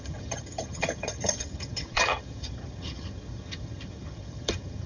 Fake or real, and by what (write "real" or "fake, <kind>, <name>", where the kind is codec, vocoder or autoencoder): fake, vocoder, HiFi-GAN